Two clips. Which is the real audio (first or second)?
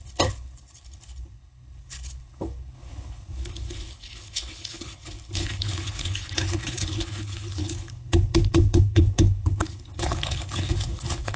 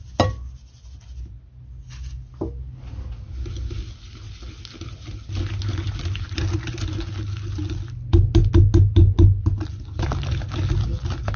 second